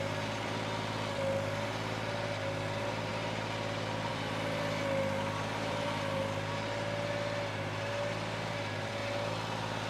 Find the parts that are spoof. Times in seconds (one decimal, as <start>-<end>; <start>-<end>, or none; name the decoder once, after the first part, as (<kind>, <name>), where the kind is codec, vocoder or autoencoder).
0.0-3.1 (vocoder, BigVGAN v2); 4.1-9.0